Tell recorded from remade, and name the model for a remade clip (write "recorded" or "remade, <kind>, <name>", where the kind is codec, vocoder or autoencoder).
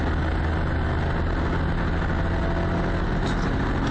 recorded